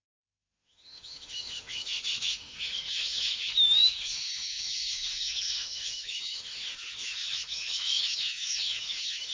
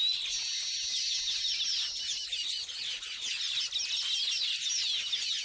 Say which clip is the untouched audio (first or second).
second